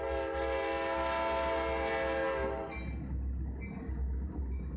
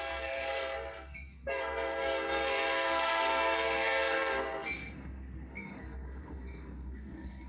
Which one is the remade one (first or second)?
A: second